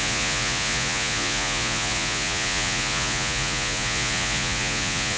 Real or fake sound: fake